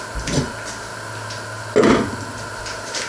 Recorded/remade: recorded